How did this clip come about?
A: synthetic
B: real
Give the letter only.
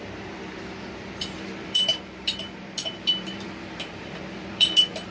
A